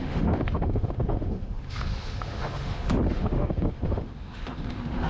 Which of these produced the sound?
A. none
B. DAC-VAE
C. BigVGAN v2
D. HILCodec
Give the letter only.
B